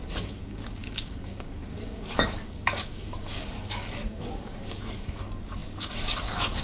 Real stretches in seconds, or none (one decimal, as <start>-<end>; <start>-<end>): none